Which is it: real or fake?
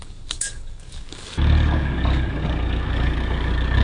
fake